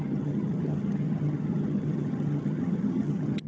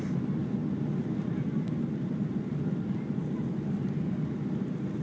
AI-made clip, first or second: first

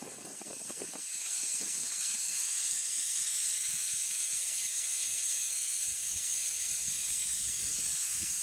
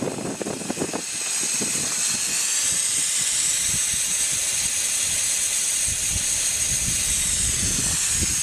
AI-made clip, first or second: first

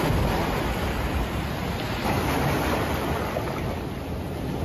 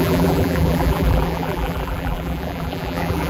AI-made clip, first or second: second